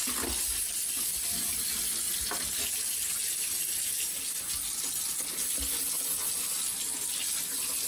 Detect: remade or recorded recorded